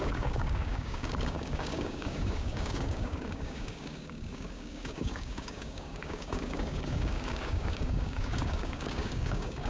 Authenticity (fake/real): fake